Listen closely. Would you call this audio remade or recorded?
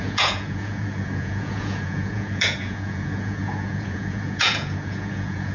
remade